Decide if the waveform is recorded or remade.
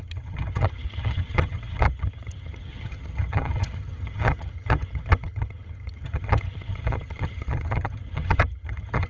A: remade